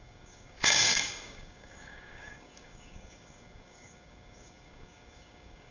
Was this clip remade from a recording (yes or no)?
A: yes